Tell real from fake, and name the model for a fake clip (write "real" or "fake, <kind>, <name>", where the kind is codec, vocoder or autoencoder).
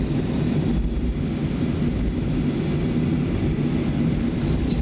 real